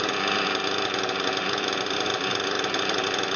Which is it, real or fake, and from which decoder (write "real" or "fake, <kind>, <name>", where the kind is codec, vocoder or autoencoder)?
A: real